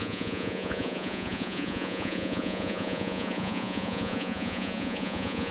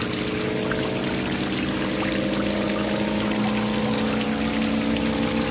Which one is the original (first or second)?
second